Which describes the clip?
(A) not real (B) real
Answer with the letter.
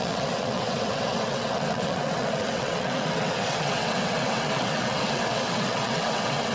A